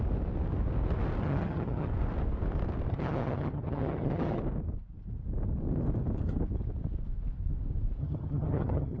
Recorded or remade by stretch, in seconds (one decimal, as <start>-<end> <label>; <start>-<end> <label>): 0.0-1.2 recorded; 1.2-1.9 remade; 1.9-2.9 recorded; 2.9-4.4 remade; 4.4-8.0 recorded; 8.0-9.0 remade